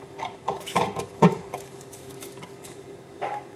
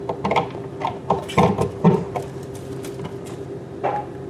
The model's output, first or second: first